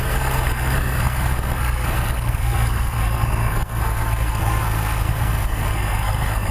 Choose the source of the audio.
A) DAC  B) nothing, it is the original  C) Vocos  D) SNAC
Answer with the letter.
D